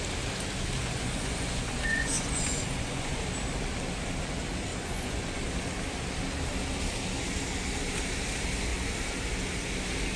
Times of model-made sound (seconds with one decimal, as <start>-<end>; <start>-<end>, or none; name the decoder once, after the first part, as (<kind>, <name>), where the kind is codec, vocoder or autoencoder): 0.8-3.2 (vocoder, Vocos); 4.7-5.4

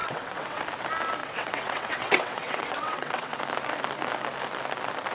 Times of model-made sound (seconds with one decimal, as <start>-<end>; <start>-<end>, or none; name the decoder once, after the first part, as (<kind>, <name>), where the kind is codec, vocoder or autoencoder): 0.0-0.6 (vocoder, WaveNeXt); 1.2-3.4

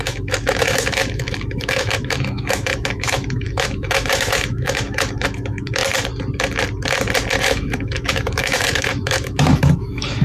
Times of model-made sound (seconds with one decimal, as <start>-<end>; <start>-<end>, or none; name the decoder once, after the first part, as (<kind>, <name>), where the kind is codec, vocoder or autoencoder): 0.0-5.8 (autoencoder, DAC-VAE); 7.4-10.2

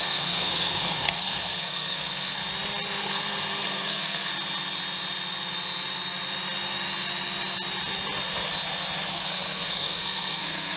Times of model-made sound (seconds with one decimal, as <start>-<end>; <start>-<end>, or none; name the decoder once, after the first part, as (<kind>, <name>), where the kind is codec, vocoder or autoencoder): 0.0-2.4 (codec, SNAC); 3.0-4.3; 9.1-10.8

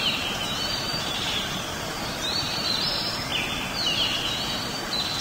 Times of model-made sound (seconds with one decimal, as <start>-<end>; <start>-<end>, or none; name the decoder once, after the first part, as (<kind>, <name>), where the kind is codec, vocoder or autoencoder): 0.0-3.3 (vocoder, BigVGAN v2)

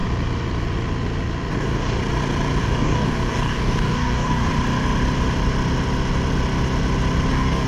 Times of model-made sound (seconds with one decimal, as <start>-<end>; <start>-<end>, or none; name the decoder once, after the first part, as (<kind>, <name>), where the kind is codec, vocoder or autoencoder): 1.5-2.0 (codec, DAC); 2.6-4.5; 7.3-7.7